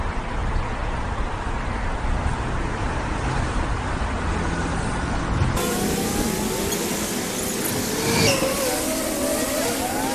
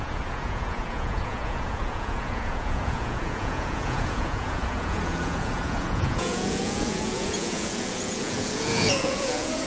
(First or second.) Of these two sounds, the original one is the first